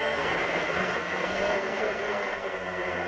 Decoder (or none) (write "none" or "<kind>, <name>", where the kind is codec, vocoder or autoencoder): codec, SNAC